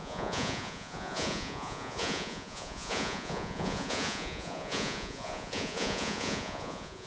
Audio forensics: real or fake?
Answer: fake